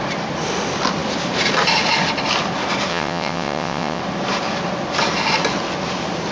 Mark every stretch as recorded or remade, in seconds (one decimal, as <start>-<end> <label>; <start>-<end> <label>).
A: 0.0-2.9 recorded; 2.9-4.0 remade; 4.0-6.3 recorded